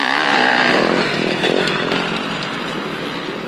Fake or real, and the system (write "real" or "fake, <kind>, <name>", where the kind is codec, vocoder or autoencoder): real